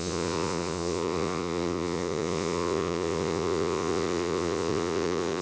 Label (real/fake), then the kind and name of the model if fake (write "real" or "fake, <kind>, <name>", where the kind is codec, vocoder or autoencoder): fake, vocoder, Vocos